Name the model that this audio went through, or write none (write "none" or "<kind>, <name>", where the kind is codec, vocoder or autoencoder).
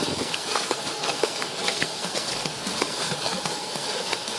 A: codec, SNAC